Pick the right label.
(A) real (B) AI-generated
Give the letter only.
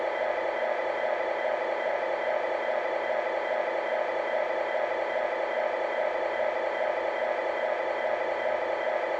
A